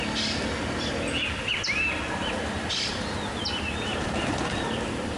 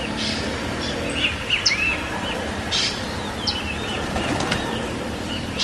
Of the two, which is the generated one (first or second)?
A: second